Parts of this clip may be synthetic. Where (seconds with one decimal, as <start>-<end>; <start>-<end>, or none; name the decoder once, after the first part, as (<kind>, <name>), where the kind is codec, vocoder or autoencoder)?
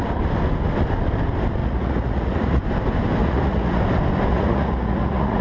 1.6-2.6 (vocoder, Vocos); 3.2-3.8; 4.3-5.4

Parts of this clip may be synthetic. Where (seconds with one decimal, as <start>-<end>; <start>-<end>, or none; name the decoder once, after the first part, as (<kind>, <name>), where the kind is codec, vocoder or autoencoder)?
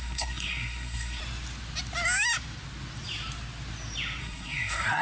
0.0-1.2 (codec, SNAC); 4.2-5.0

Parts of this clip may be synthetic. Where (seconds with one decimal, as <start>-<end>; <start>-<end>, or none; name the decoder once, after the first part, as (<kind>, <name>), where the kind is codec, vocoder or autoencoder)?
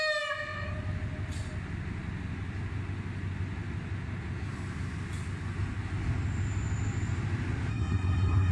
7.7-8.5 (codec, SNAC)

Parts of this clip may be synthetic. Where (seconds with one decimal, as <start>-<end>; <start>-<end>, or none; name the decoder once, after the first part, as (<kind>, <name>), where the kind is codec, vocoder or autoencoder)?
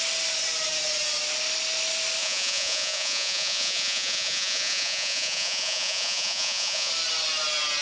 2.2-6.9 (vocoder, Vocos)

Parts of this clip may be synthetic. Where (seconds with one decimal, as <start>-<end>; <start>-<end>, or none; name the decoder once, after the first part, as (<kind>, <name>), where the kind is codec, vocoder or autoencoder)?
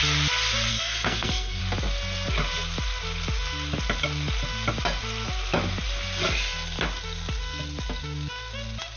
0.7-1.6 (codec, SNAC)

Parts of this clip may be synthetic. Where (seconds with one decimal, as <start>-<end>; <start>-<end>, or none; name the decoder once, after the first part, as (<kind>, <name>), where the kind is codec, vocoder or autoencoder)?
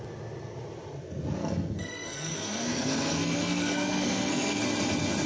1.4-4.6 (codec, SNAC)